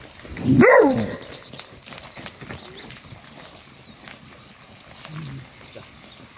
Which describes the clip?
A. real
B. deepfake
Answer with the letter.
A